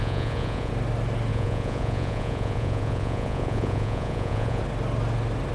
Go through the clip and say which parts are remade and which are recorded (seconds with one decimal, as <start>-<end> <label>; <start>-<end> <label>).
0.0-0.7 remade; 0.7-1.3 recorded; 1.3-4.6 remade; 4.6-5.5 recorded